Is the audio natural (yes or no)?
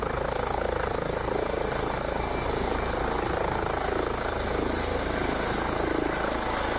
yes